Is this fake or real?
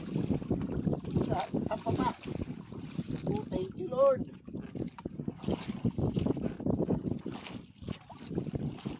real